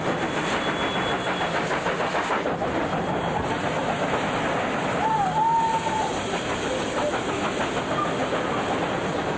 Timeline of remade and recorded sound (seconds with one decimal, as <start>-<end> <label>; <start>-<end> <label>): 0.0-9.4 recorded